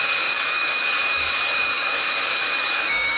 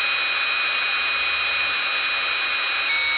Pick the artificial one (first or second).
first